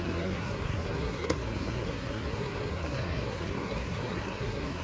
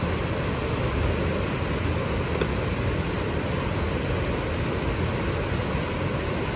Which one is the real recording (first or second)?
second